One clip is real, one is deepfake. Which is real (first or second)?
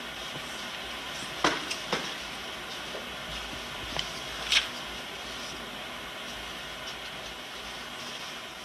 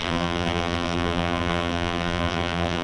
first